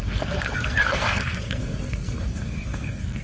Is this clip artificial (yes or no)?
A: yes